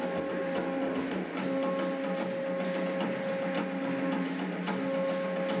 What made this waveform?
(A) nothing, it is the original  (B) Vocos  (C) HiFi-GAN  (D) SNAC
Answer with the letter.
A